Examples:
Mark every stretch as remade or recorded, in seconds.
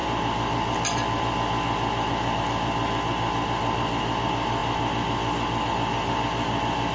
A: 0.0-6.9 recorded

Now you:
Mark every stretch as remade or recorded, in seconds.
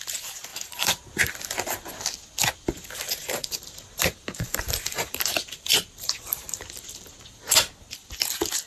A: 0.0-0.5 recorded; 0.5-1.3 remade; 1.3-3.2 recorded; 3.2-7.1 remade; 7.1-8.7 recorded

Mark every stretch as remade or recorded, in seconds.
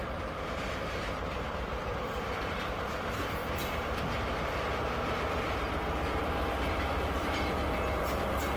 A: 0.0-3.4 remade; 3.4-6.7 recorded; 6.7-8.6 remade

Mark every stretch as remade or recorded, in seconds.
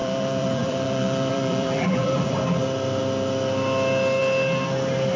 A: 0.0-2.3 remade; 2.3-5.2 recorded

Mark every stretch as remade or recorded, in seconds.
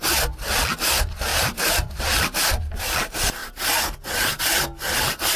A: 0.0-1.3 recorded; 1.3-2.8 remade; 2.8-5.4 recorded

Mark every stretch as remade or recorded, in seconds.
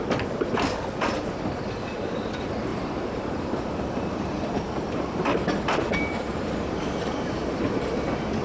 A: 0.0-2.7 recorded; 2.7-7.7 remade; 7.7-8.4 recorded